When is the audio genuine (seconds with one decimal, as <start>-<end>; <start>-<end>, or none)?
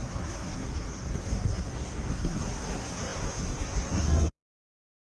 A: none